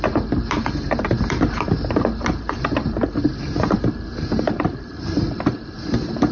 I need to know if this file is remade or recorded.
remade